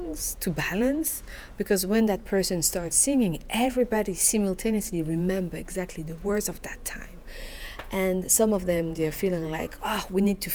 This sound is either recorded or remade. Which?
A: remade